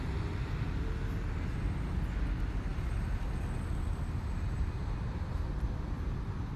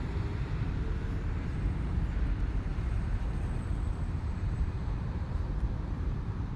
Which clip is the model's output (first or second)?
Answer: second